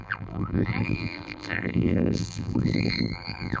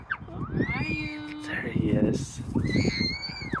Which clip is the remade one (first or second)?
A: first